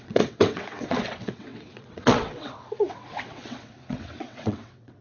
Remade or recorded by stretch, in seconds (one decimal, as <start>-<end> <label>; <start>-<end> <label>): 0.0-5.0 remade